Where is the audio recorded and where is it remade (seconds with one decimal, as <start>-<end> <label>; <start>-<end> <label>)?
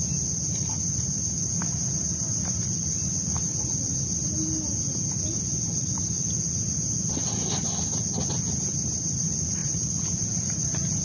0.0-11.0 recorded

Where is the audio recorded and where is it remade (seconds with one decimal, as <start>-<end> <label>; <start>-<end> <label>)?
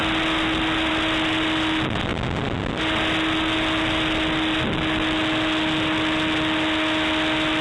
0.0-7.6 recorded